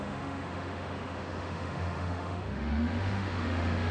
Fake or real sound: fake